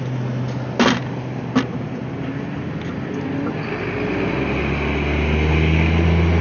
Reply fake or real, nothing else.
real